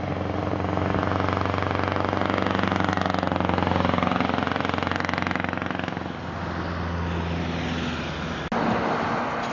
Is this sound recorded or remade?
recorded